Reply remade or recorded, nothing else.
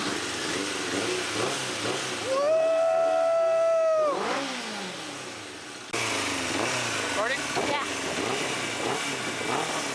recorded